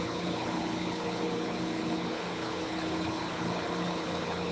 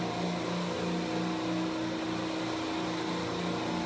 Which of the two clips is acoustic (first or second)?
second